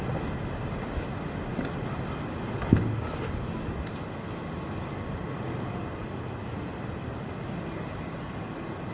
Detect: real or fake real